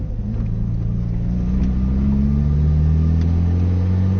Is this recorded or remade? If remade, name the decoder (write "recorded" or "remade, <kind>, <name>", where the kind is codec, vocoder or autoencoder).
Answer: recorded